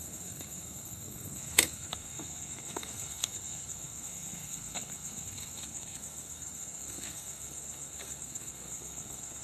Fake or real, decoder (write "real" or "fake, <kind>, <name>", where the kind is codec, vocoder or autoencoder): fake, codec, SNAC